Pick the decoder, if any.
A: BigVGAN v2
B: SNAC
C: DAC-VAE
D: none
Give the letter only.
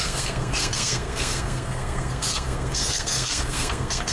B